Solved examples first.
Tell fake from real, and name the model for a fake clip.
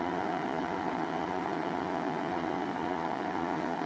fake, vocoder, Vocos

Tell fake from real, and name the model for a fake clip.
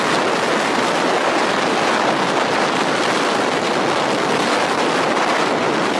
real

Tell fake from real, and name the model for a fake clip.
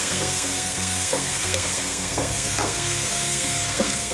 fake, codec, SNAC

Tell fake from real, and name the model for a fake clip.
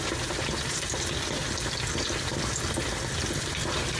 real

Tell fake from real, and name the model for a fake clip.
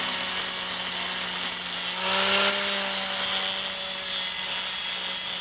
real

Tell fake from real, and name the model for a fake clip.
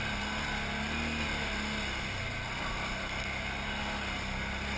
real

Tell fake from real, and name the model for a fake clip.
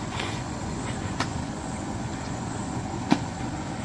fake, vocoder, Vocos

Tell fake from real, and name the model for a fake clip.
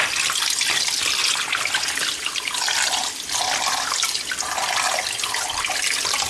real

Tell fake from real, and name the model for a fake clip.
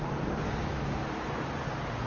real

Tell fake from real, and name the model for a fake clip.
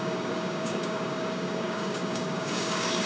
fake, codec, DAC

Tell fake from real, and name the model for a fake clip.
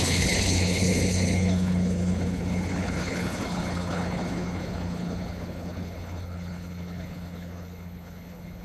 fake, codec, HILCodec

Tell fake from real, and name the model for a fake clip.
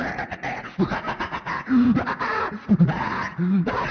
fake, vocoder, Vocos